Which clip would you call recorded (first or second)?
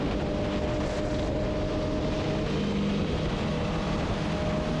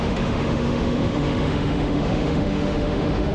first